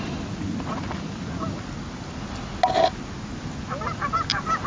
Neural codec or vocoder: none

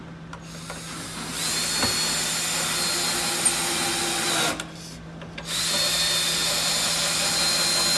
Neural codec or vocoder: none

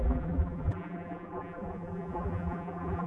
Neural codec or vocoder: vocoder, BigVGAN v2